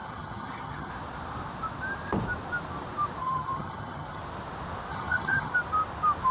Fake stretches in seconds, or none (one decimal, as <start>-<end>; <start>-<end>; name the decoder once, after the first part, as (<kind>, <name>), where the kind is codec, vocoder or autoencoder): 0.0-0.9 (vocoder, HiFi-GAN); 3.2-4.2; 4.9-5.5